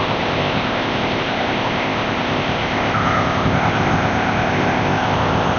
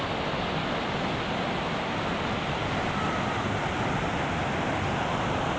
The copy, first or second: first